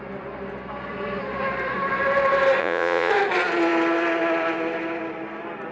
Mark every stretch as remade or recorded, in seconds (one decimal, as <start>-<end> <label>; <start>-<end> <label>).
0.0-2.6 recorded; 2.6-3.1 remade; 3.1-5.7 recorded